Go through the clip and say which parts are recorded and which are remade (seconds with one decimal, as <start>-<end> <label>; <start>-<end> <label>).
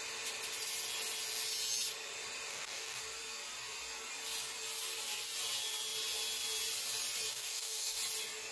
0.0-2.5 recorded; 2.5-3.0 remade; 3.0-7.3 recorded; 7.3-8.0 remade; 8.0-8.5 recorded